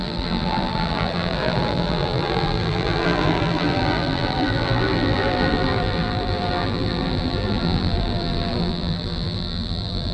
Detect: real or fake fake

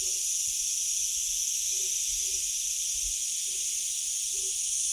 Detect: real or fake real